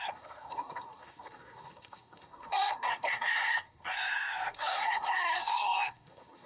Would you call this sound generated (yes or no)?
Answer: yes